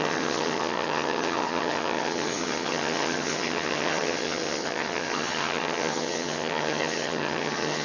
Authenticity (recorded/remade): remade